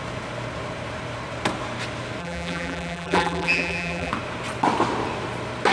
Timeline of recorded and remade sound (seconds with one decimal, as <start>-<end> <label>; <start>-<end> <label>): 0.0-2.2 recorded; 2.2-4.1 remade; 4.1-5.7 recorded

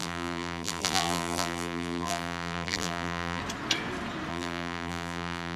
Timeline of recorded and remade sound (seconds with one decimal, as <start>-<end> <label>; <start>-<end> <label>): 0.0-3.4 remade; 3.4-4.3 recorded; 4.3-5.6 remade

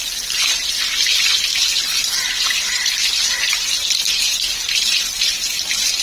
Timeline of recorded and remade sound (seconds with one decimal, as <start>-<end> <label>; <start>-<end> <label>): 0.0-6.0 recorded

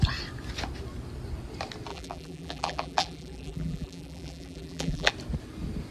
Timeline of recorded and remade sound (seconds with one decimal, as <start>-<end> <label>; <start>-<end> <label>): 0.0-1.9 recorded; 1.9-5.1 remade; 5.1-5.9 recorded

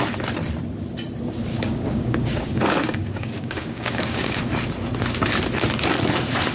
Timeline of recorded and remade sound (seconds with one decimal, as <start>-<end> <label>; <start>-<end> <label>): 0.0-1.5 recorded; 1.5-4.4 remade; 4.4-6.5 recorded

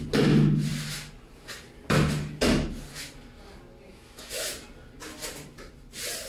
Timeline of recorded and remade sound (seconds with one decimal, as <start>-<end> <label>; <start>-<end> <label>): 0.0-3.9 recorded; 3.9-4.5 remade; 4.5-6.3 recorded